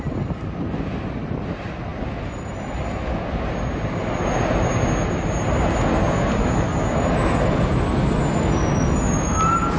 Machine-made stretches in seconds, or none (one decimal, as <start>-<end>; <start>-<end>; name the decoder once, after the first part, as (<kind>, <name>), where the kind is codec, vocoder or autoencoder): none